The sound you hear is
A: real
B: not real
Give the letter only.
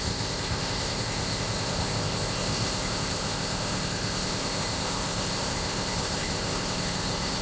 B